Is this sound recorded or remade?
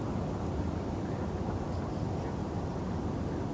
recorded